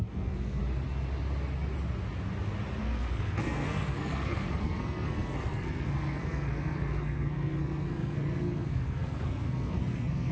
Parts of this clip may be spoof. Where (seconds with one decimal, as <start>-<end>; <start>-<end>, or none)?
0.0-0.6; 2.8-10.3